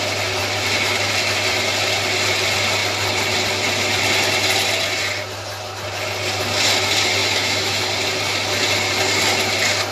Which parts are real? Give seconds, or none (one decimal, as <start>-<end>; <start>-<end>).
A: 0.0-7.2; 7.8-9.9